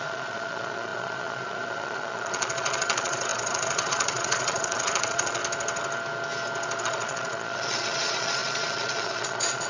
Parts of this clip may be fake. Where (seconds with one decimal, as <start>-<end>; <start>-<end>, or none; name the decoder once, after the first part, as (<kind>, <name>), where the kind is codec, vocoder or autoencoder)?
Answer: 0.0-5.4 (vocoder, Vocos); 6.8-9.7